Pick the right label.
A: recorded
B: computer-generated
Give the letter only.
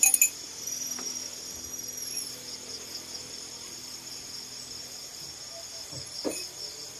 A